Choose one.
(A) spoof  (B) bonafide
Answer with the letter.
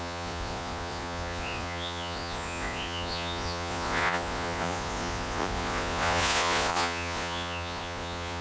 A